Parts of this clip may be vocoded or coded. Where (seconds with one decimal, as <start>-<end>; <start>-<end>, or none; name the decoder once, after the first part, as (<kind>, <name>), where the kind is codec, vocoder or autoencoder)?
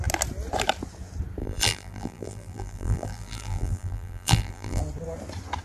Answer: 1.4-4.8 (vocoder, BigVGAN v2)